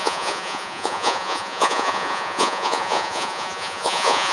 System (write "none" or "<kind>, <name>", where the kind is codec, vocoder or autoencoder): vocoder, Vocos